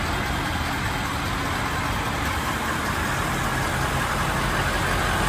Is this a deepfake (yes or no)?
no